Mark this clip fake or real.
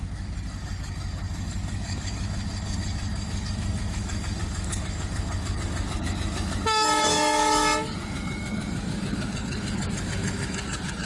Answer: fake